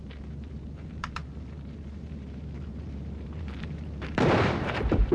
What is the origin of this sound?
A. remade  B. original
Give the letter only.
A